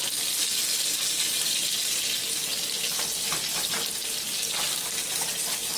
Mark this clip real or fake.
real